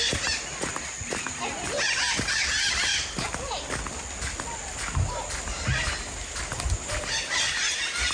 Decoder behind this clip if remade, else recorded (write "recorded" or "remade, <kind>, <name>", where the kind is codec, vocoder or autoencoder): recorded